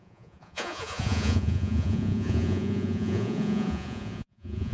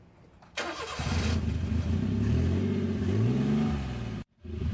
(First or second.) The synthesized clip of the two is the first